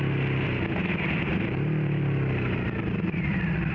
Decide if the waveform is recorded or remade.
remade